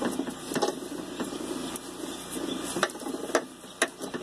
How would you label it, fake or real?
real